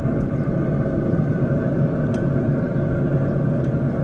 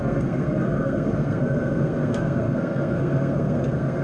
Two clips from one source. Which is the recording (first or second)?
first